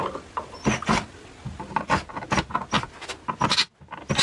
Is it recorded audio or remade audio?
recorded